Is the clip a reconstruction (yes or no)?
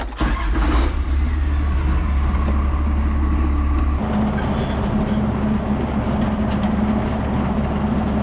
no